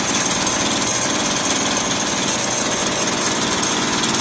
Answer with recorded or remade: remade